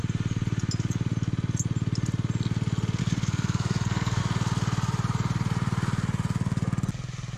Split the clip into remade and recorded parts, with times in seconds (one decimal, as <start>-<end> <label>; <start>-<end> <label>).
0.0-3.0 recorded; 3.0-4.2 remade; 4.2-7.4 recorded